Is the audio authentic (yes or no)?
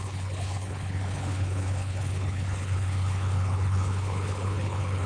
no